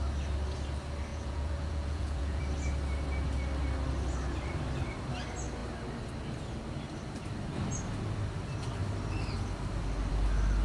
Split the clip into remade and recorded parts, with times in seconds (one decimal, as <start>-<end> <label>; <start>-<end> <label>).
0.0-1.1 recorded; 1.1-2.4 remade; 2.4-10.6 recorded